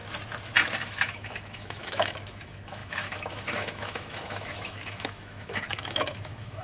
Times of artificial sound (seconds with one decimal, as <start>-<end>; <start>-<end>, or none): 0.7-6.6